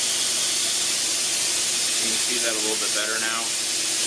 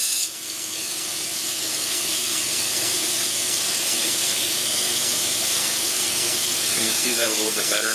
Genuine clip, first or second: first